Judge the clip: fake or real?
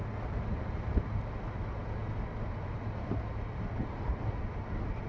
real